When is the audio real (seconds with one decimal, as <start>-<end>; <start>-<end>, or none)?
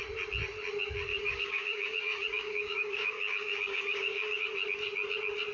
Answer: 0.0-1.1; 4.4-5.5